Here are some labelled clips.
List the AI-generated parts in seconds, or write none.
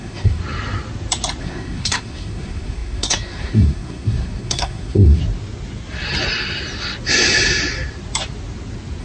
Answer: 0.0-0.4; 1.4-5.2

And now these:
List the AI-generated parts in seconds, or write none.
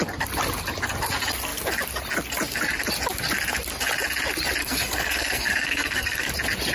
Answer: 4.6-6.3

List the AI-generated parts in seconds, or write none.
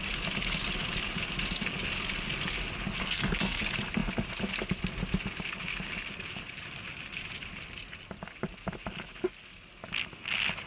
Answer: 3.0-3.6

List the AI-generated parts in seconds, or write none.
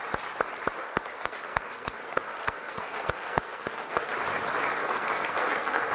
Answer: 0.8-4.1; 4.8-5.9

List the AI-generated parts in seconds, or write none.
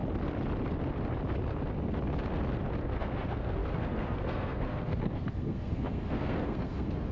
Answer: 2.8-7.1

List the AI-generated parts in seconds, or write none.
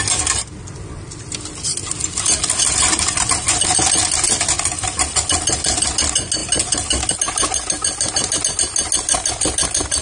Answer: none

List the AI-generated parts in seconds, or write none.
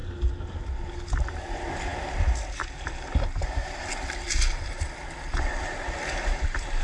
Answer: none